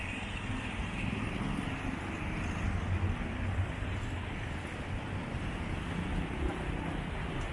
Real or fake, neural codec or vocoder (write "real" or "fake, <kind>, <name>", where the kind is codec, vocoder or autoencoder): real